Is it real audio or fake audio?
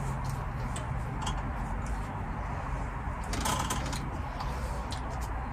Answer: real